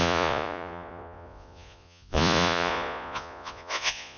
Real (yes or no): no